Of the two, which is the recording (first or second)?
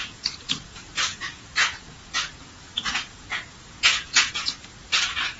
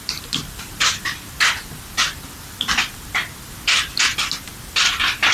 second